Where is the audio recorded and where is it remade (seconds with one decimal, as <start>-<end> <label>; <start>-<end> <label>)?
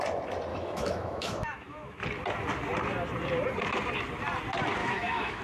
0.0-0.5 recorded; 0.5-2.0 remade; 2.0-4.8 recorded; 4.8-5.4 remade